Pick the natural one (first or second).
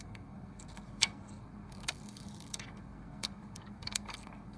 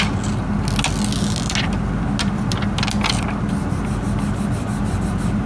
second